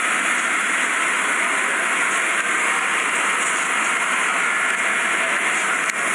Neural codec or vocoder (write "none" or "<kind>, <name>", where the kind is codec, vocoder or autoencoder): none